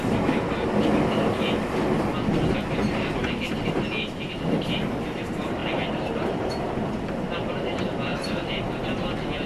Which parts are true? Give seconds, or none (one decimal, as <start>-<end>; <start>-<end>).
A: 0.0-8.1; 9.0-9.5